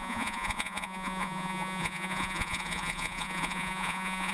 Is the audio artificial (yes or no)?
yes